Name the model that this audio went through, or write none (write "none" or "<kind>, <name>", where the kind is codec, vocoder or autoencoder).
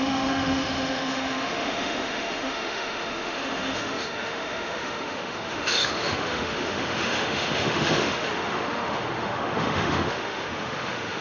autoencoder, DAC-VAE